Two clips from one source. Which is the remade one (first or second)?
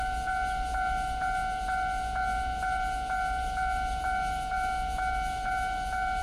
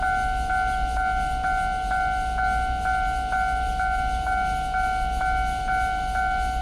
first